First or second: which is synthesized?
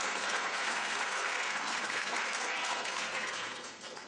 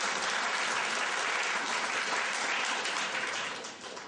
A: first